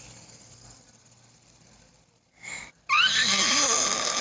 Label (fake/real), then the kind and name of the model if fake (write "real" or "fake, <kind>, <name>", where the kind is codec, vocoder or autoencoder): real